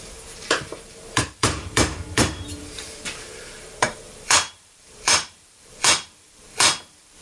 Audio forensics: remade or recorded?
remade